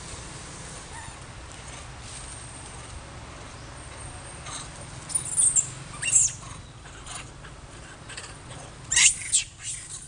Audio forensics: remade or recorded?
recorded